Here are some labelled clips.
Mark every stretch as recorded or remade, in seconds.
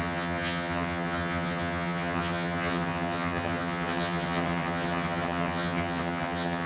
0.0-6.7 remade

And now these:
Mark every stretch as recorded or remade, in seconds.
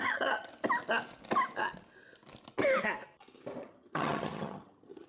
0.0-0.5 remade; 0.5-3.6 recorded; 3.6-5.1 remade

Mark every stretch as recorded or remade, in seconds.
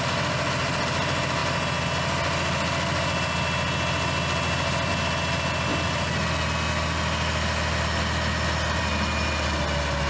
0.0-10.1 recorded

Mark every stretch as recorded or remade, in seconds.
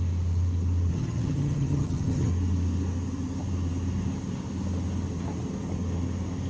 0.0-0.9 recorded; 0.9-2.3 remade; 2.3-6.5 recorded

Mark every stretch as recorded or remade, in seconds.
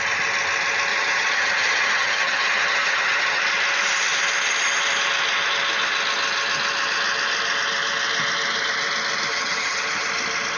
0.0-0.9 recorded; 0.9-3.4 remade; 3.4-9.3 recorded; 9.3-10.1 remade; 10.1-10.6 recorded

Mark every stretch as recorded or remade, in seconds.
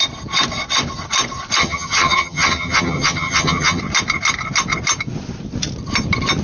0.0-1.6 recorded; 1.6-3.8 remade; 3.8-6.4 recorded